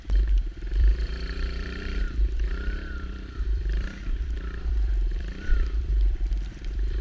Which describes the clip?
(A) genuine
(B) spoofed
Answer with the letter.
B